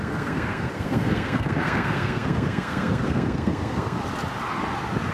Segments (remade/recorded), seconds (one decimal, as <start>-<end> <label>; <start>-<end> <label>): 0.0-4.0 remade; 4.0-5.1 recorded